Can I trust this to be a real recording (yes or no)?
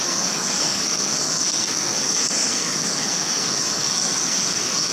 no